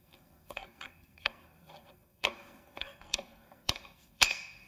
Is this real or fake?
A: fake